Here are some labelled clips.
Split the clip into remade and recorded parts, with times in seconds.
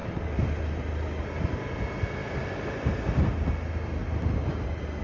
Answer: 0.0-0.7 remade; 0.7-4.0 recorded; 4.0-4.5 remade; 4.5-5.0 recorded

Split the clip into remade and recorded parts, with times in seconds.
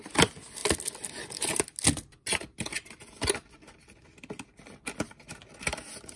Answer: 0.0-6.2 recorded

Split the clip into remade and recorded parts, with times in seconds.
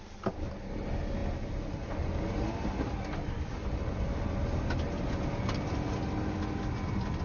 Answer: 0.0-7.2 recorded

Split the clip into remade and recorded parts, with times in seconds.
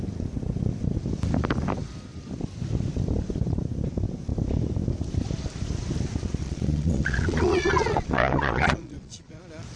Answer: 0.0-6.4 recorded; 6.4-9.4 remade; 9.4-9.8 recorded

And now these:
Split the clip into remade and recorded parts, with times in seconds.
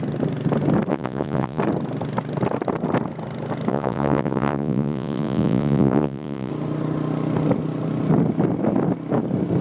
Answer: 0.0-0.9 recorded; 0.9-1.6 remade; 1.6-3.7 recorded; 3.7-6.5 remade; 6.5-9.6 recorded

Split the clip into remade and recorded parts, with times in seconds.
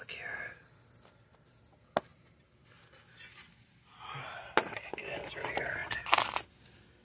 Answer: 0.0-7.0 recorded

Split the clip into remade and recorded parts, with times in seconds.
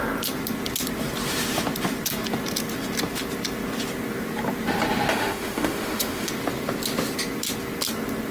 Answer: 0.0-5.1 recorded; 5.1-6.3 remade; 6.3-8.3 recorded